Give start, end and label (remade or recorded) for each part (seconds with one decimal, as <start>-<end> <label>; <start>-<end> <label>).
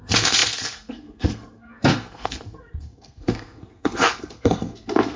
0.0-5.2 remade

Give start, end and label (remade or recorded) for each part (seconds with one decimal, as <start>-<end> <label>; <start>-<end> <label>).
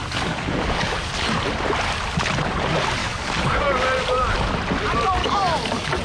0.0-1.1 remade; 1.1-3.0 recorded; 3.0-3.6 remade; 3.6-5.2 recorded; 5.2-6.0 remade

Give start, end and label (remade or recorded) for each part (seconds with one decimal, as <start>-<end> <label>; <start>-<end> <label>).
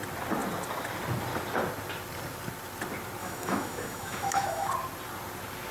0.0-3.2 recorded; 3.2-4.7 remade; 4.7-5.7 recorded